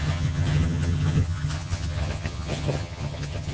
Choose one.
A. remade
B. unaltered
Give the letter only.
A